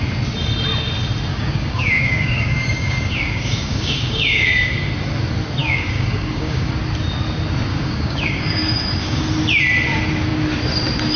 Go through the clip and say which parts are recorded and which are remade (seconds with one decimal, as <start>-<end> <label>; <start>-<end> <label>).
0.0-1.3 recorded; 1.3-4.9 remade; 4.9-5.6 recorded; 5.6-6.7 remade; 6.7-7.7 recorded; 7.7-9.2 remade; 9.2-11.2 recorded